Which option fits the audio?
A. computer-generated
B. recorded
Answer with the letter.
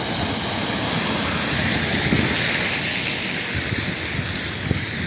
B